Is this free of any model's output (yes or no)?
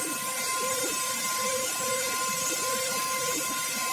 yes